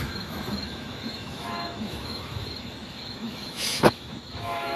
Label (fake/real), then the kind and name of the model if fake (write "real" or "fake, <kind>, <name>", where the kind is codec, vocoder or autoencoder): fake, autoencoder, DAC-VAE